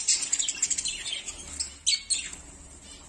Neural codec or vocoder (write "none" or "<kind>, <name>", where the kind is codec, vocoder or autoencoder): none